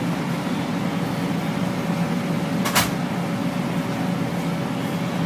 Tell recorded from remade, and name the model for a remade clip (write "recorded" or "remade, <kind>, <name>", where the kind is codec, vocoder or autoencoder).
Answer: recorded